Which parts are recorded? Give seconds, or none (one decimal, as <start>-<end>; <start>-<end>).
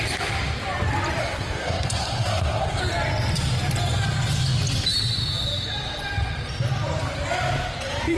0.0-1.2; 2.8-8.2